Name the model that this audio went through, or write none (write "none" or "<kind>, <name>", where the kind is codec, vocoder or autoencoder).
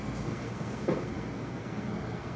codec, SNAC